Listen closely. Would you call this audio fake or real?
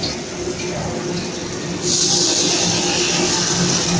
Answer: real